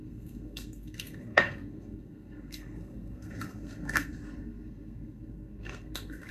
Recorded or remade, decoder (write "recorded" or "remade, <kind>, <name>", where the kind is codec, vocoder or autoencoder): remade, codec, SNAC